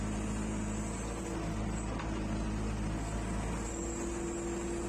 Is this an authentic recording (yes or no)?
yes